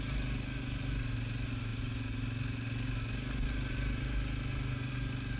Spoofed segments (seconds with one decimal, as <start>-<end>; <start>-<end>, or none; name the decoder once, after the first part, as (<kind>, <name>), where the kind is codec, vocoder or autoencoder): none